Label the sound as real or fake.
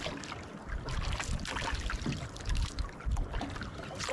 real